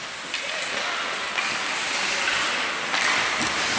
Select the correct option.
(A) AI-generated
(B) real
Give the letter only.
B